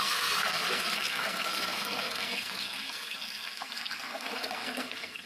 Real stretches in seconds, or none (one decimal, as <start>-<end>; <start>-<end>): none